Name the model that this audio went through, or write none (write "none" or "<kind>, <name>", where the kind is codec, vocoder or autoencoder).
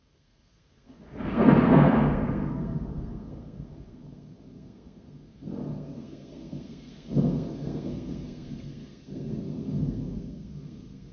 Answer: codec, SNAC